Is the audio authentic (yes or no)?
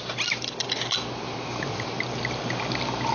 yes